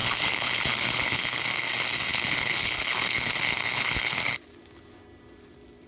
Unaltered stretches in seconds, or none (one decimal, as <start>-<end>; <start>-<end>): 1.4-2.1; 4.2-5.9